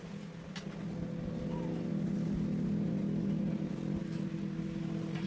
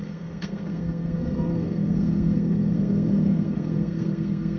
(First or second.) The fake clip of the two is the second